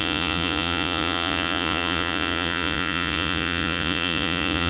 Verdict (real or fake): fake